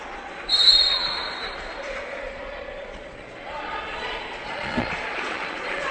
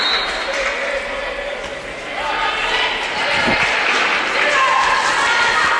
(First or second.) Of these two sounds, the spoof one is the first